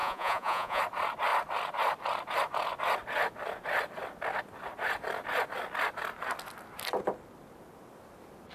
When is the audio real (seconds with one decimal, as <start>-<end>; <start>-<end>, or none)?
0.8-8.5